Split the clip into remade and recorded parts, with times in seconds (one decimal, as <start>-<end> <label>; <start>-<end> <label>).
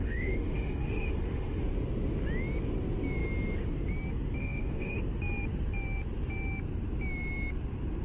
0.0-1.6 remade; 1.6-4.4 recorded; 4.4-5.0 remade; 5.0-8.0 recorded